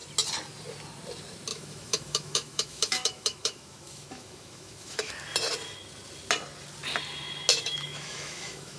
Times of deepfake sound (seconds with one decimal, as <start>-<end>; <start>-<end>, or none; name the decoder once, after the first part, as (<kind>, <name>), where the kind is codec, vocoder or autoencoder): 1.5-5.1 (autoencoder, DAC-VAE); 7.5-8.8